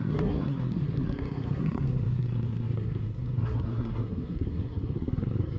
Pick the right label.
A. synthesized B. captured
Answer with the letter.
A